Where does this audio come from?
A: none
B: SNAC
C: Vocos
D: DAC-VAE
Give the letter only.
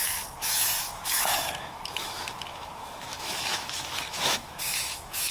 D